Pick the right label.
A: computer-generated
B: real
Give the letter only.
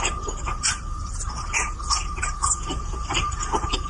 B